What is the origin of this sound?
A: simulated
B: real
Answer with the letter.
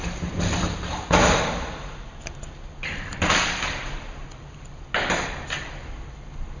A